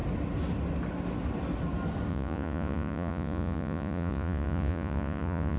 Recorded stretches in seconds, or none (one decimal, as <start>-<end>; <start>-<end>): 0.0-2.1